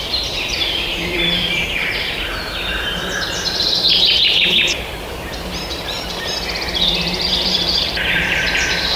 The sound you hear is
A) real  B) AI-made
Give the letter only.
B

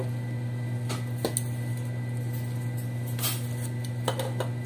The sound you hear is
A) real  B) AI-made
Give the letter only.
A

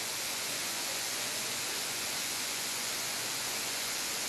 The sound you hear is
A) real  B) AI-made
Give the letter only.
B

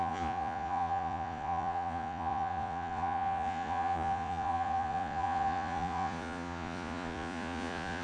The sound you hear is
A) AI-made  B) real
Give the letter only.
A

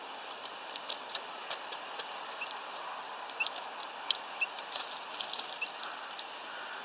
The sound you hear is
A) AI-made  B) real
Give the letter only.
B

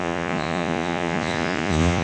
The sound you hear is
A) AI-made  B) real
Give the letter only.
A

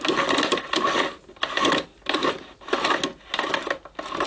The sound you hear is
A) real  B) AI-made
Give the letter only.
A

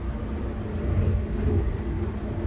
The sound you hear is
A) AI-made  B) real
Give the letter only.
B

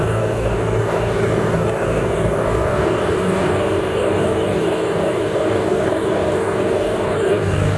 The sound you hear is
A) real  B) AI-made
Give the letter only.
B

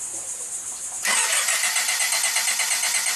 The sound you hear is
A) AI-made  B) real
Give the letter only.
B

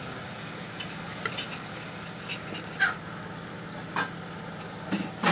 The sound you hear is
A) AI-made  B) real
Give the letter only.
B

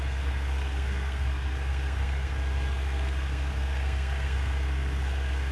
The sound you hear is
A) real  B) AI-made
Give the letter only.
B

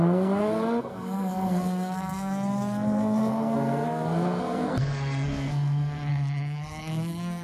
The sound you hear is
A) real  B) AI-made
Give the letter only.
B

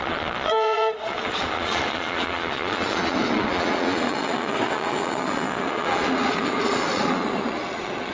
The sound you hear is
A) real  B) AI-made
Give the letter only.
B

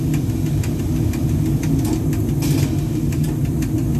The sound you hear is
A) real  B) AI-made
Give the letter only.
A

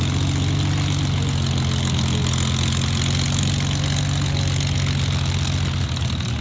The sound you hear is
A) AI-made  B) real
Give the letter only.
B